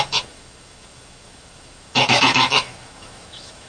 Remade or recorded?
remade